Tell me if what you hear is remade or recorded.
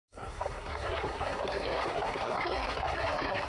remade